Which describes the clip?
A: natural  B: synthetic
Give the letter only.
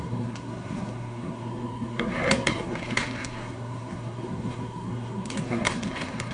B